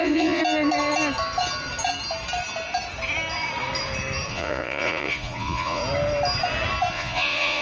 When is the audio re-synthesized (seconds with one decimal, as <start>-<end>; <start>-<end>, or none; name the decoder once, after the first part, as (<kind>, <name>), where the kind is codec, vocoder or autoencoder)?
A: 0.0-0.4 (vocoder, Vocos); 4.3-5.8; 6.9-7.6

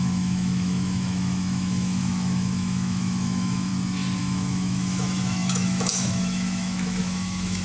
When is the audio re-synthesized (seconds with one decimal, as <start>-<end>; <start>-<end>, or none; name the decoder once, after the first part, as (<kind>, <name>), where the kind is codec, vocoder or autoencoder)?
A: 0.0-3.7 (autoencoder, DAC-VAE); 4.2-7.6